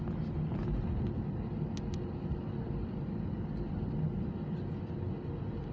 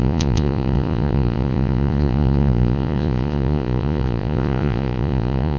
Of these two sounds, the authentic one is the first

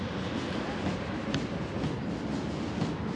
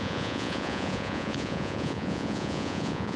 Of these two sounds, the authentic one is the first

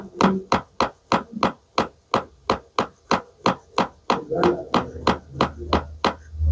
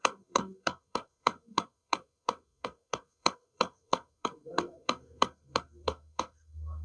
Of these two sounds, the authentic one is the first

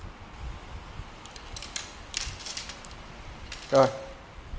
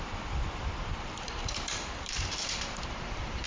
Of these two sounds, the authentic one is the first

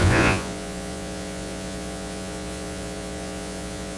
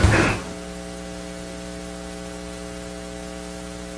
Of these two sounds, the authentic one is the second